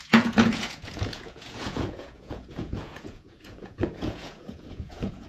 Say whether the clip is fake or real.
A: fake